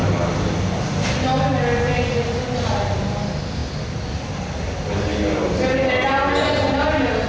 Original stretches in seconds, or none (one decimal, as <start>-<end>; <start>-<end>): 0.0-7.3